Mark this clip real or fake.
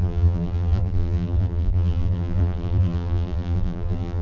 fake